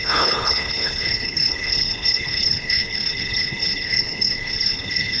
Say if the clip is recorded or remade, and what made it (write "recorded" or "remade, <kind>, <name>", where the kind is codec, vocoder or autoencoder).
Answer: remade, codec, HILCodec